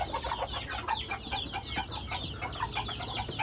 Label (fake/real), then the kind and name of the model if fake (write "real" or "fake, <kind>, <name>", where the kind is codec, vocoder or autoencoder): real